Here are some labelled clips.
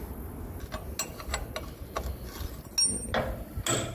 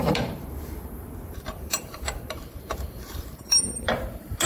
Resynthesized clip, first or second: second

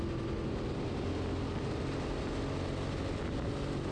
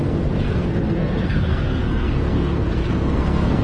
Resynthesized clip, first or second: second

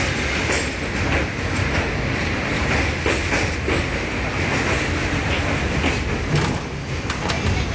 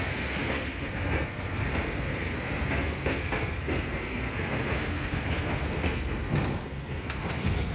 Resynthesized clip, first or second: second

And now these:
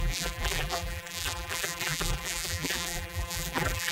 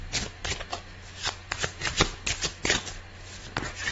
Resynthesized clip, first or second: first